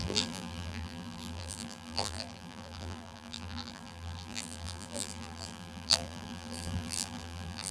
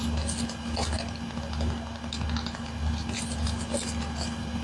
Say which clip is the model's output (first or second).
first